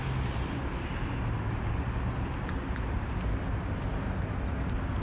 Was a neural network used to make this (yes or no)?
no